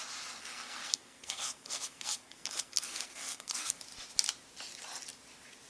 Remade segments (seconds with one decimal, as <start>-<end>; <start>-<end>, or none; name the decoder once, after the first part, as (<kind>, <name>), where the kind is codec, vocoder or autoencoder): 0.4-3.8 (codec, SNAC)